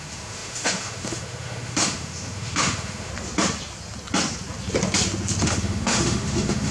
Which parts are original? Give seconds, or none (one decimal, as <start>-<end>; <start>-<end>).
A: 3.1-5.4